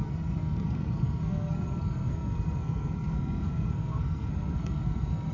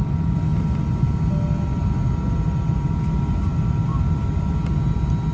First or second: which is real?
second